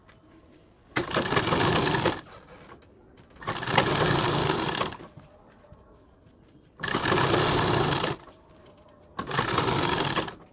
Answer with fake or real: real